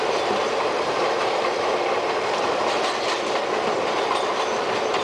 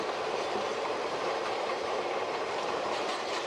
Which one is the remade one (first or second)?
second